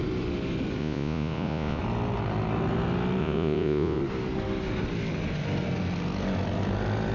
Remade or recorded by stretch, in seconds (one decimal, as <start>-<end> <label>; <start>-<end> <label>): 0.0-0.8 recorded; 0.8-1.8 remade; 1.8-3.2 recorded; 3.2-4.0 remade; 4.0-7.1 recorded